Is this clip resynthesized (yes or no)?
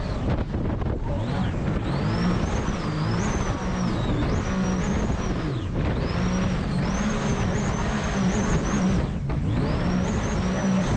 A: no